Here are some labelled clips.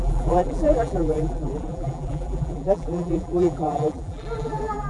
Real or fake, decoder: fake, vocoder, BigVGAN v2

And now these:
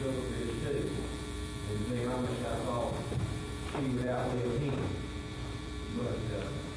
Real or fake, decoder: fake, vocoder, BigVGAN v2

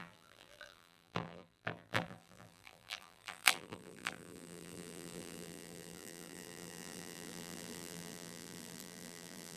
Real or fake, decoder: fake, vocoder, BigVGAN v2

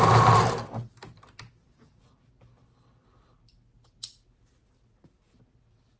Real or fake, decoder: real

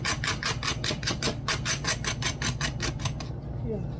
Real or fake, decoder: real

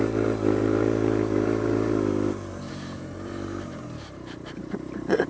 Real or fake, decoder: fake, vocoder, BigVGAN v2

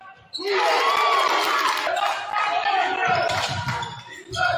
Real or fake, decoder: fake, vocoder, BigVGAN v2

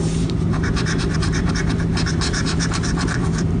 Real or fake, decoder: fake, vocoder, BigVGAN v2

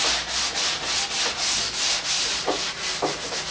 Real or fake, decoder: real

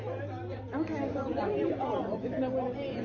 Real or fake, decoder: fake, vocoder, BigVGAN v2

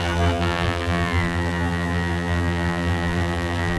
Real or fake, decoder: fake, vocoder, BigVGAN v2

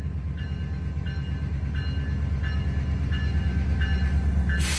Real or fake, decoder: real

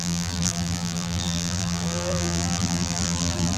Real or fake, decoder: fake, vocoder, BigVGAN v2